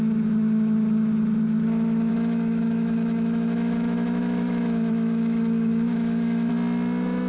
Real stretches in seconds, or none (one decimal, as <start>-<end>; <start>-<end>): 0.0-2.1; 6.5-7.3